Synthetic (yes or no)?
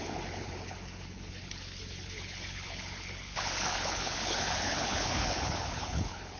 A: yes